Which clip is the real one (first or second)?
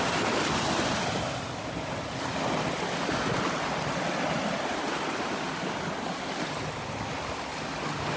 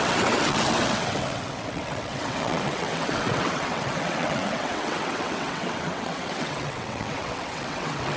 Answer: first